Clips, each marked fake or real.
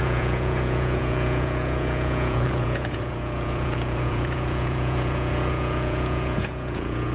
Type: fake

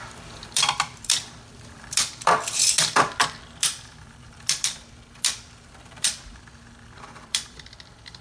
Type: fake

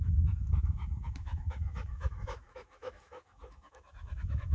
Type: fake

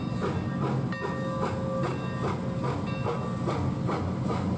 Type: real